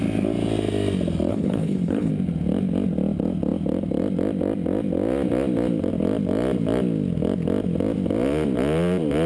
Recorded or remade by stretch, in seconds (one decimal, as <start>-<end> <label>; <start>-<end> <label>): 0.0-1.3 recorded; 1.3-2.1 remade; 2.1-9.3 recorded